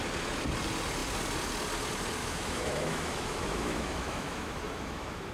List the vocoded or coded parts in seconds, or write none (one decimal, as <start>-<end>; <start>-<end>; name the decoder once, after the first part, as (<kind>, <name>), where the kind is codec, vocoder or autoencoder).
2.2-5.3 (autoencoder, DAC-VAE)

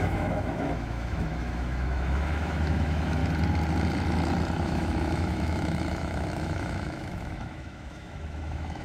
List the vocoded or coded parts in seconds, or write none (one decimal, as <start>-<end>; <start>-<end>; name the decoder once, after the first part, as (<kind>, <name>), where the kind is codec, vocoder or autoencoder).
0.0-3.2 (autoencoder, DAC-VAE); 4.6-8.8